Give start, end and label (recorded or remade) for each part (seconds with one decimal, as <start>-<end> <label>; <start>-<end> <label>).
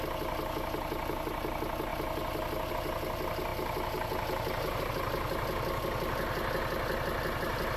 0.0-7.8 recorded